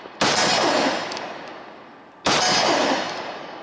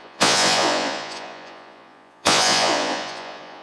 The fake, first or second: second